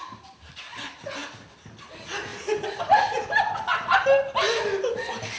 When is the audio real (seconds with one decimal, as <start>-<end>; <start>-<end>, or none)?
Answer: 0.0-5.4